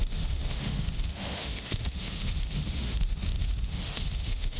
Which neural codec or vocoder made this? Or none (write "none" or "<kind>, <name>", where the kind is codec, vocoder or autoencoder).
autoencoder, DAC-VAE